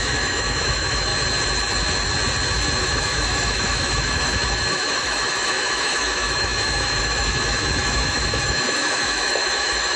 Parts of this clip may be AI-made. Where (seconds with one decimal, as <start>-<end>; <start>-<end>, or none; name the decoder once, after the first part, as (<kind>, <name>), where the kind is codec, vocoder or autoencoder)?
0.0-1.1 (autoencoder, DAC-VAE); 2.8-10.0